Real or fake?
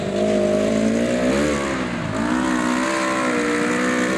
real